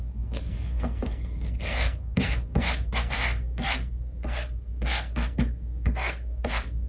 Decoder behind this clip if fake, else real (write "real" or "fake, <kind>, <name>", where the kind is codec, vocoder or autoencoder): fake, codec, SNAC